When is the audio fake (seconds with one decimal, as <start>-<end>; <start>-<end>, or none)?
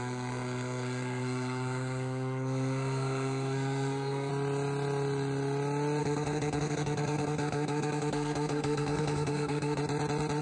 0.0-4.3; 6.0-9.8